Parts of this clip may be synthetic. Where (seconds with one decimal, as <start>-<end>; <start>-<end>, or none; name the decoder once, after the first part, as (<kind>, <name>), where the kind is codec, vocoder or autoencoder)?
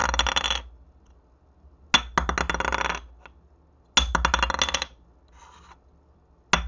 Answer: none